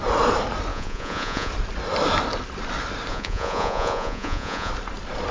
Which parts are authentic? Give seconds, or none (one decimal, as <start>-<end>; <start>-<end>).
0.0-0.7; 1.5-3.1; 4.7-5.3